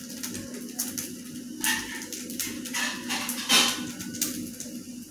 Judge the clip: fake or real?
real